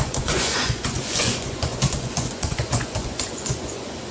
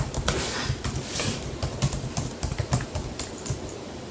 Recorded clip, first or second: second